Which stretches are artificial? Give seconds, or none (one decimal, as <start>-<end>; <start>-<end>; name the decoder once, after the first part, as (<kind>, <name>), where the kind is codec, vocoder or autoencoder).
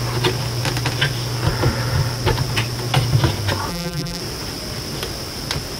3.7-4.2 (vocoder, BigVGAN v2)